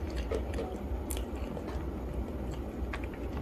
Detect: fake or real real